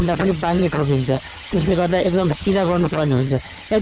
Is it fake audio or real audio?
fake